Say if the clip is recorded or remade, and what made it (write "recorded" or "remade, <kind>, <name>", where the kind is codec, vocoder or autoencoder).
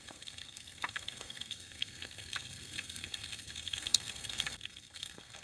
remade, codec, SNAC